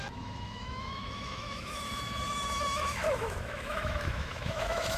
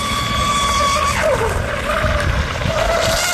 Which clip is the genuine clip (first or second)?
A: second